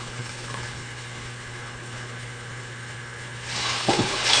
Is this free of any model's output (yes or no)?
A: no